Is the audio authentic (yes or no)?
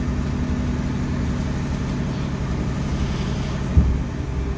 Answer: yes